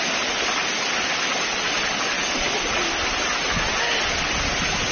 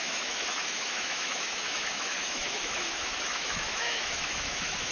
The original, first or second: first